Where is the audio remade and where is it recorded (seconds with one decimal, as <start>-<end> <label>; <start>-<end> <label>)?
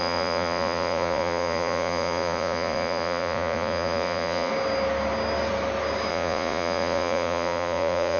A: 0.0-4.5 remade; 4.5-6.1 recorded; 6.1-8.2 remade